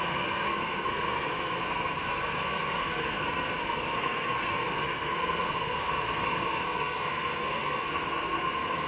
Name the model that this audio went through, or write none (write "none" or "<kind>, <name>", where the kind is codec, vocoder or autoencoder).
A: codec, SNAC